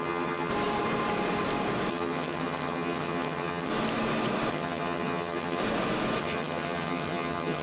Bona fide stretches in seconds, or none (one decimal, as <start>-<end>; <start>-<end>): 0.5-1.9; 3.7-4.5; 5.6-6.2